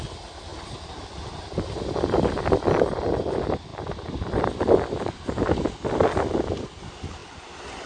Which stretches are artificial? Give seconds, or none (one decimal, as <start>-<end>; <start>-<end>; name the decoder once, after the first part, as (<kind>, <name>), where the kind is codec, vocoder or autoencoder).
none